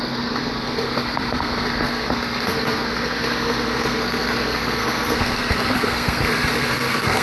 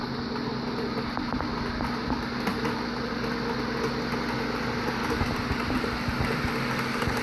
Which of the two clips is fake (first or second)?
first